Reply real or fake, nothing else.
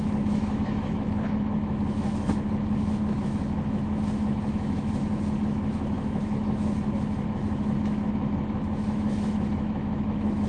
fake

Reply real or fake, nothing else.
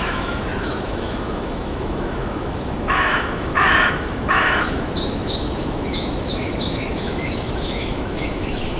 fake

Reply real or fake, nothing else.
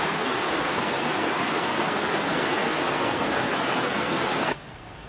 fake